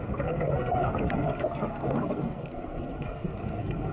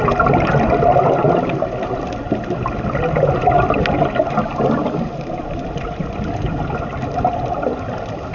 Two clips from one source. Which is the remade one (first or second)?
first